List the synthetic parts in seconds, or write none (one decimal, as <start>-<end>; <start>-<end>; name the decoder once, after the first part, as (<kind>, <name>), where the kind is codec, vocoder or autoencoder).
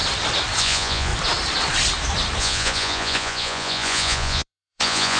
0.6-1.1 (vocoder, Vocos); 2.4-5.2